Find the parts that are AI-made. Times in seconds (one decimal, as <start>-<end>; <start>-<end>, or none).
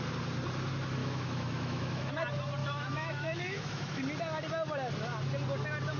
1.0-2.1; 2.6-4.0